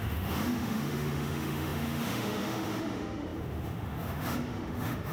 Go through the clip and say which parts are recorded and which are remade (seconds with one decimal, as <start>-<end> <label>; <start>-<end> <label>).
0.0-5.1 remade